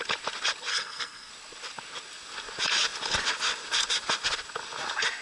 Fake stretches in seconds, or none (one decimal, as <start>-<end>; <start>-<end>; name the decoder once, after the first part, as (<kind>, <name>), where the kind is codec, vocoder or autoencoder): 0.7-1.3 (codec, SNAC)